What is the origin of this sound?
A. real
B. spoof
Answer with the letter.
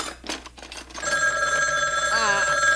A